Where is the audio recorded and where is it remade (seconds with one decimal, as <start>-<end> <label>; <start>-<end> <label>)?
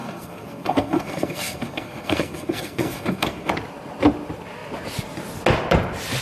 0.0-3.5 remade; 3.5-6.2 recorded